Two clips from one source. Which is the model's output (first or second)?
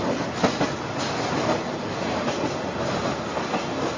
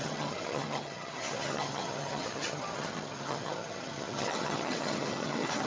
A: second